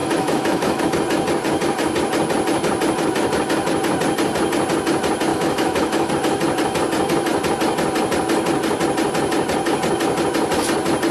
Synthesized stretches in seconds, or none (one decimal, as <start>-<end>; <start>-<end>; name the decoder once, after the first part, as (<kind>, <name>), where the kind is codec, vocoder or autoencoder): 0.0-0.8 (autoencoder, DAC-VAE); 5.3-6.1